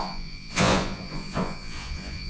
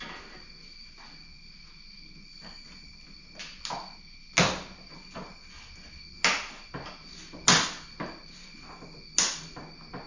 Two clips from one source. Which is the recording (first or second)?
second